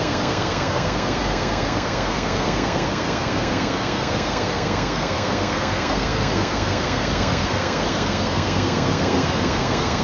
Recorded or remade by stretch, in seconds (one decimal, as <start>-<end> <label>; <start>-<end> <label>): 0.0-10.0 remade